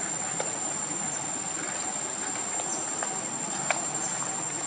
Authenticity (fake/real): real